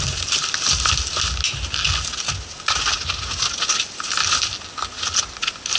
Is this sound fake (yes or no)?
no